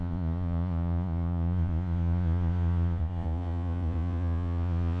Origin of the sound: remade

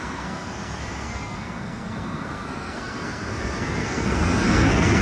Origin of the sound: remade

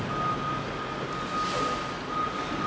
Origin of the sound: recorded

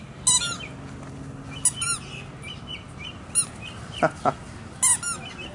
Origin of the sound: recorded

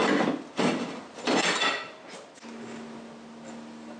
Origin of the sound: recorded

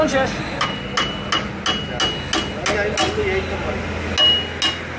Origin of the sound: recorded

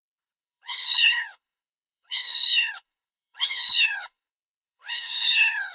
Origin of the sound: remade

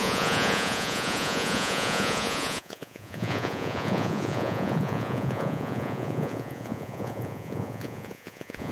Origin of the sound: remade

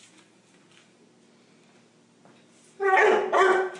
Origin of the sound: recorded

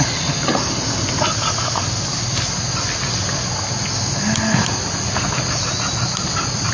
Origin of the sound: recorded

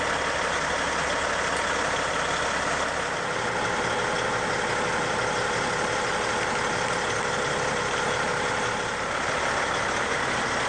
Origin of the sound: recorded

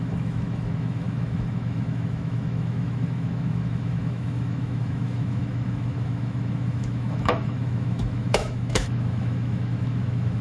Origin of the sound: remade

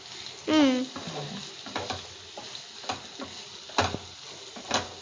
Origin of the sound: recorded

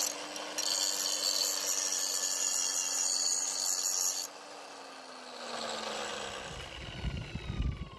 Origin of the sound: recorded